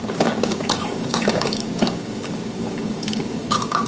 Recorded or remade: remade